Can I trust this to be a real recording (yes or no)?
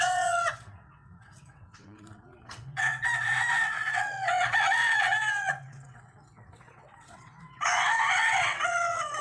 no